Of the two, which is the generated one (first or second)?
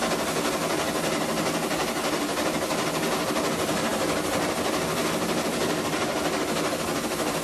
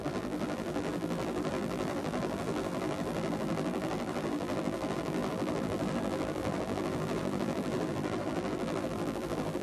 second